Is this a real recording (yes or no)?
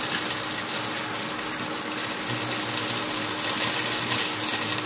yes